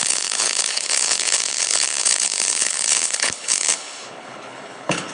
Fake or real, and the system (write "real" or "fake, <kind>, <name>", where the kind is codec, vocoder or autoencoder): fake, codec, HILCodec